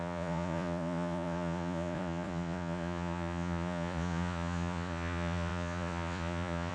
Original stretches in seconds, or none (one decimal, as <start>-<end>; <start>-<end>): none